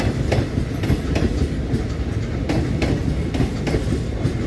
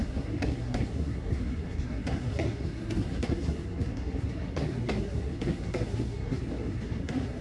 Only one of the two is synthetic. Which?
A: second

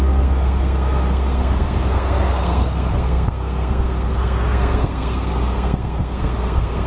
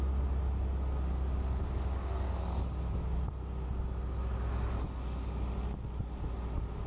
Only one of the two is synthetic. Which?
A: first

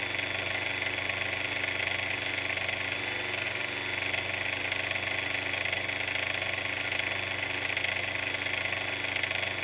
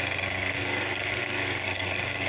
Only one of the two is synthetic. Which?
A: second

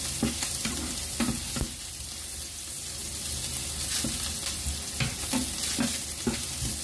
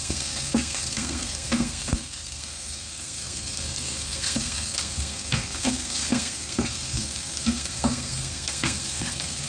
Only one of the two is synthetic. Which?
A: second